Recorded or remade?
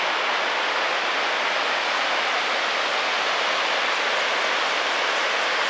recorded